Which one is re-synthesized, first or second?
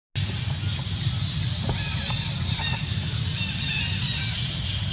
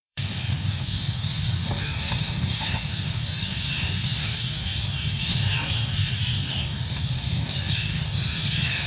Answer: second